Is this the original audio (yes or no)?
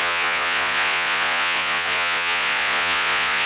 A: no